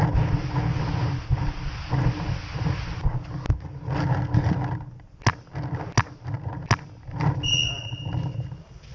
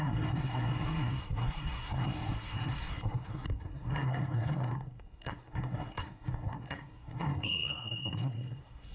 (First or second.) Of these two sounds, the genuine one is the first